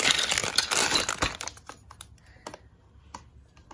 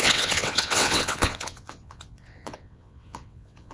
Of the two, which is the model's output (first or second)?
second